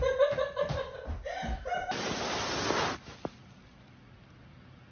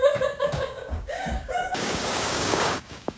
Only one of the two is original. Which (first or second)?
first